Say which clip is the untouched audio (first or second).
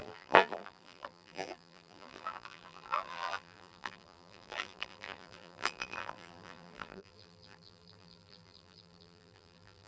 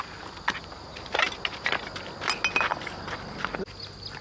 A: second